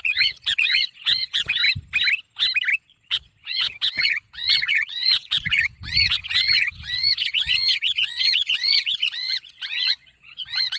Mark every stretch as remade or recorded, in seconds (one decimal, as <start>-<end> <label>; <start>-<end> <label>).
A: 0.0-1.6 remade; 1.6-2.8 recorded; 2.8-10.8 remade